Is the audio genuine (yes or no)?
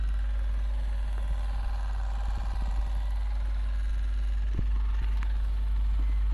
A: yes